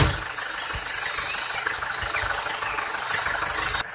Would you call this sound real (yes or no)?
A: yes